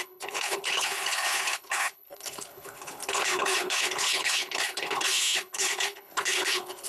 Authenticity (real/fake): fake